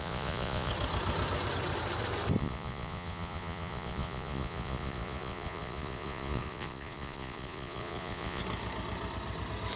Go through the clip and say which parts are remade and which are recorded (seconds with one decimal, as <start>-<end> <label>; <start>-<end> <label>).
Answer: 0.0-0.7 remade; 0.7-2.4 recorded; 2.4-8.4 remade; 8.4-9.8 recorded